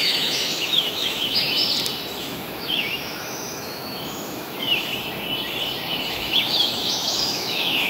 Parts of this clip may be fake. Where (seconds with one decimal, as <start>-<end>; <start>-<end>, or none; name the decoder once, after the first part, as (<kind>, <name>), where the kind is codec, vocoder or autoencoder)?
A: 0.0-1.6 (autoencoder, DAC-VAE); 2.2-4.9; 6.1-7.9